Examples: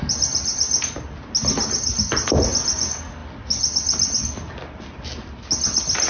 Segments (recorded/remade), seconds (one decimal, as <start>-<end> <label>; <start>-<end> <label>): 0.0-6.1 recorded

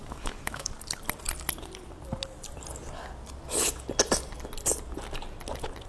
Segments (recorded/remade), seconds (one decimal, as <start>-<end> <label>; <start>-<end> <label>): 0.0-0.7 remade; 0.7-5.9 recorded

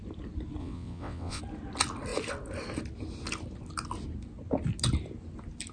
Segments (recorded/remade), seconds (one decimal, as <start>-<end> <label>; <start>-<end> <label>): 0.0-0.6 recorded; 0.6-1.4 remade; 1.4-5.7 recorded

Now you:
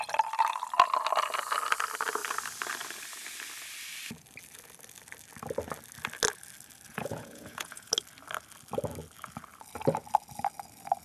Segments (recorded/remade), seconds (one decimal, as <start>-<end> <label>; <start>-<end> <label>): 0.0-6.9 recorded; 6.9-7.9 remade; 7.9-11.0 recorded